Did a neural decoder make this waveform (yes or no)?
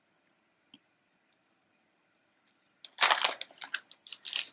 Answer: no